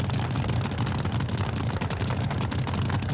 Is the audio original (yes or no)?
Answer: yes